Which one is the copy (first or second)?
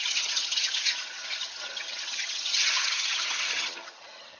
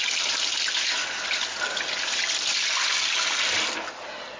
first